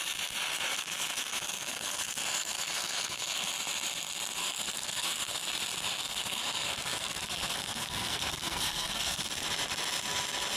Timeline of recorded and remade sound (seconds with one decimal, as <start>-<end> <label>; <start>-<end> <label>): 0.0-0.7 recorded; 0.7-3.5 remade; 3.5-4.4 recorded; 4.4-5.4 remade; 5.4-6.0 recorded; 6.0-9.3 remade; 9.3-10.6 recorded